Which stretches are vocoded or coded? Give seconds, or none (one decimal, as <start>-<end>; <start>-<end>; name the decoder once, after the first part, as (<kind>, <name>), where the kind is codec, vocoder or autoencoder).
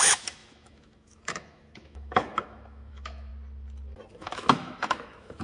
0.0-3.3 (autoencoder, DAC-VAE); 4.1-5.4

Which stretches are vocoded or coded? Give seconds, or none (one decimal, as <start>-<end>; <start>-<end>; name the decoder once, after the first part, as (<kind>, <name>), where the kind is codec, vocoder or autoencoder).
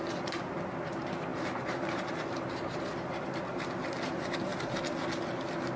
1.3-3.2 (vocoder, BigVGAN v2)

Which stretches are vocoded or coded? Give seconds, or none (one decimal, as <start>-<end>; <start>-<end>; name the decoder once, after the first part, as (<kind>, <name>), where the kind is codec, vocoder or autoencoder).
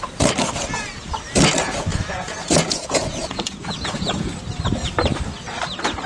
1.9-4.3 (vocoder, Vocos)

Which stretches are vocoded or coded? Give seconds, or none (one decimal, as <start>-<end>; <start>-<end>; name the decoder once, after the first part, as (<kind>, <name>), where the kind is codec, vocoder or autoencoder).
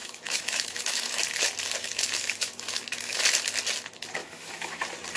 0.0-1.2 (autoencoder, DAC-VAE); 1.8-3.2; 4.2-4.8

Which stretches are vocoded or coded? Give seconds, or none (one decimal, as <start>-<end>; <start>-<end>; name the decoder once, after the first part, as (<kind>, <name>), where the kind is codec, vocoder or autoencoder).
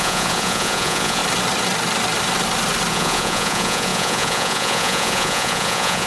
0.0-1.2 (vocoder, Vocos); 2.9-6.1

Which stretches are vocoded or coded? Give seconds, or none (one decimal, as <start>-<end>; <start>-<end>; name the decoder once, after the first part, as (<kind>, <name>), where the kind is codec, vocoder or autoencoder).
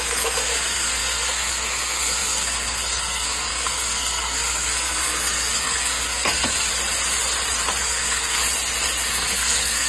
0.0-6.7 (codec, SNAC); 7.8-8.4; 9.1-9.9